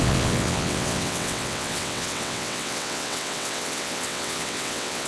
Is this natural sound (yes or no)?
no